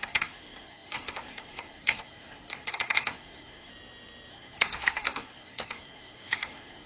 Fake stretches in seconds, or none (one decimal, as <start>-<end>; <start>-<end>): 0.0-3.7; 4.3-6.9

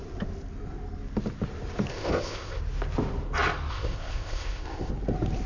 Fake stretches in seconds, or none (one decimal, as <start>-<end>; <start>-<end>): 1.9-2.6; 3.7-4.9

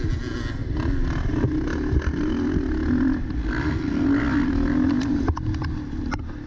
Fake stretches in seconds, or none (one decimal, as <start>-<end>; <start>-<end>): none